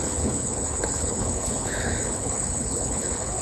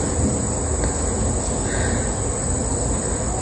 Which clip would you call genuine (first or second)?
second